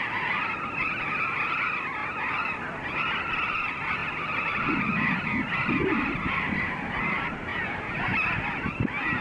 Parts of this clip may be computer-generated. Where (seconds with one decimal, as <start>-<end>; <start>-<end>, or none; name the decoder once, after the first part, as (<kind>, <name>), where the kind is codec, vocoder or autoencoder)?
0.0-2.0 (vocoder, BigVGAN v2); 3.2-7.5